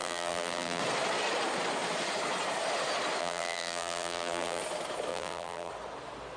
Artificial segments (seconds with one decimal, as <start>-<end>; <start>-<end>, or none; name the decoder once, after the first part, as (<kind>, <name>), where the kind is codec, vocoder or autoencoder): 0.0-0.8 (vocoder, BigVGAN v2); 3.2-4.6; 5.1-5.7